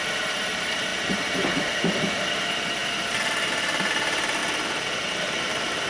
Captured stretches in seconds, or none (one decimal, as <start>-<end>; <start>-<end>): 4.4-5.1